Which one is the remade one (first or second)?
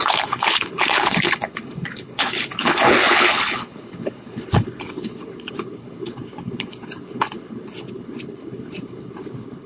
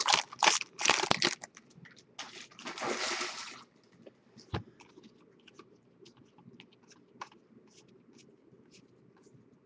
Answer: first